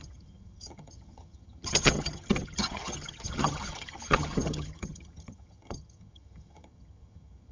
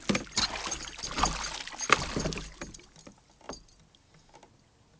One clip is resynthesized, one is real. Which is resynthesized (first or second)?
first